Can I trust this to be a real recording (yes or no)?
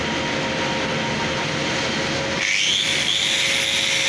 yes